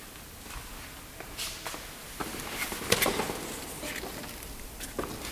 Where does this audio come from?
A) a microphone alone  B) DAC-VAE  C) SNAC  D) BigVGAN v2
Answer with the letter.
A